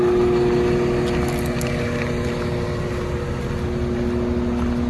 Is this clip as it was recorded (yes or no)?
yes